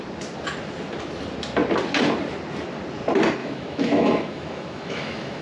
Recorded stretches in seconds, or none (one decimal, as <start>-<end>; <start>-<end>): 0.0-3.4